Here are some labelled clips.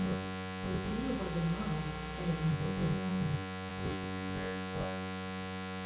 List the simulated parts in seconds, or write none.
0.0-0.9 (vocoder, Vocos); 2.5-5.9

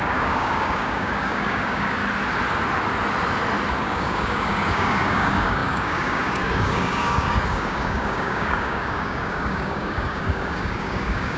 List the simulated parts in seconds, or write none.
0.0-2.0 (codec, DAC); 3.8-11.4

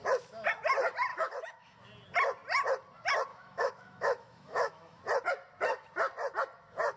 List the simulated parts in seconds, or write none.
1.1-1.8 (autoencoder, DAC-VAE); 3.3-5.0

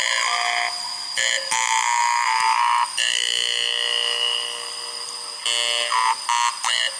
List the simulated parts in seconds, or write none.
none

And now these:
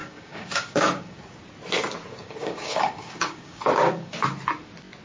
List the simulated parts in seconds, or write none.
0.0-1.4 (codec, DAC); 2.1-4.1

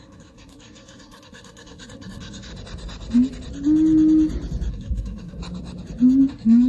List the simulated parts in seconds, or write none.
0.0-2.5 (codec, SNAC); 4.7-5.4; 6.3-6.7

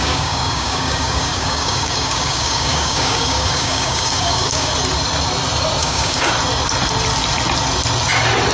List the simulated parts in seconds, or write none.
0.0-4.7 (codec, DAC); 5.8-6.3

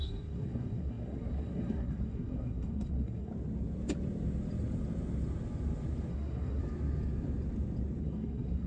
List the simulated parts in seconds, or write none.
0.0-3.3 (codec, SNAC); 6.1-6.6; 8.0-8.7